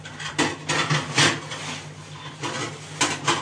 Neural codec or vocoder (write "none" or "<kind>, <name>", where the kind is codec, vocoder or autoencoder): none